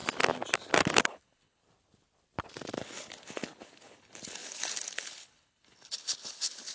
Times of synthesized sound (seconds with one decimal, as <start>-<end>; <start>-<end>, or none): 1.0-1.6; 2.8-6.7